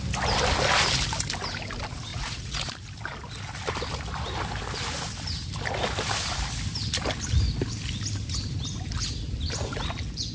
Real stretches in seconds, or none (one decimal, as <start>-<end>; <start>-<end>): 0.0-2.1; 2.7-10.3